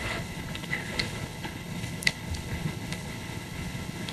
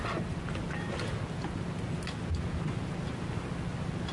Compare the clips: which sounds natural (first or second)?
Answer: second